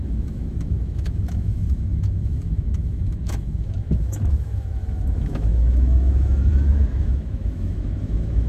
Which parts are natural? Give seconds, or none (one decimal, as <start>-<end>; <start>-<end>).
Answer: none